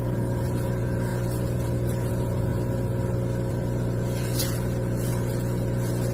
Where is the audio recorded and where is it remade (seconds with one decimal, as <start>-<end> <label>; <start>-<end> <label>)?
0.0-2.5 remade; 2.5-3.5 recorded; 3.5-6.1 remade